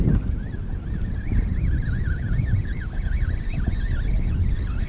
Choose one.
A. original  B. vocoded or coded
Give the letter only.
A